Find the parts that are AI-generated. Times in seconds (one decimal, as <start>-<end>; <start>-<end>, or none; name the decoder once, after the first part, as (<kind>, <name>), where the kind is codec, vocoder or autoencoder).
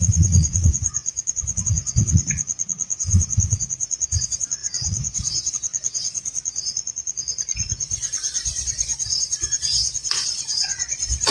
0.0-11.3 (vocoder, Vocos)